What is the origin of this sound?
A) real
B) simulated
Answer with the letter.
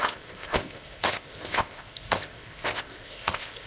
B